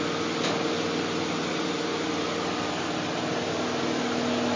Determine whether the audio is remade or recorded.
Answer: recorded